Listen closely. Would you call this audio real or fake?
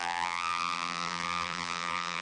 fake